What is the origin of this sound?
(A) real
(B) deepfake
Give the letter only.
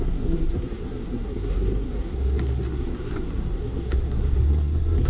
B